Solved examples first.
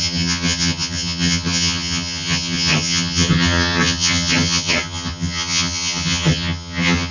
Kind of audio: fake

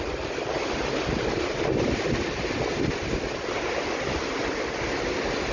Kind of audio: real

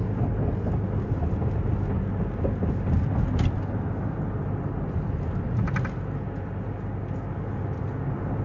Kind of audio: real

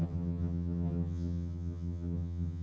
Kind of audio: fake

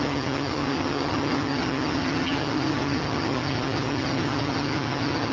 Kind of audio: fake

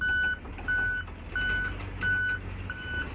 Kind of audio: real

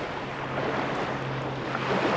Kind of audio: real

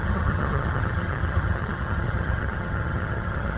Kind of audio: fake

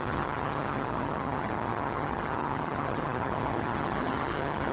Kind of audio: fake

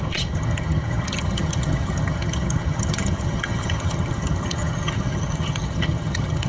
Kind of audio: fake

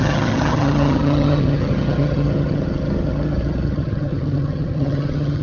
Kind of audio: fake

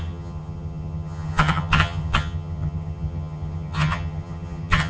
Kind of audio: fake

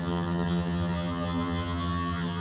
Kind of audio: fake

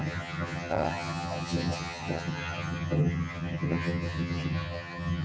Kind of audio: fake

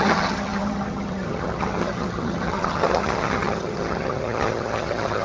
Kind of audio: fake